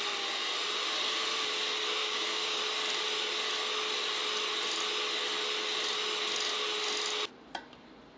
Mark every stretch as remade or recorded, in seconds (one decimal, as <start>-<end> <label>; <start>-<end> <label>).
0.0-2.0 recorded; 2.0-2.6 remade; 2.6-8.2 recorded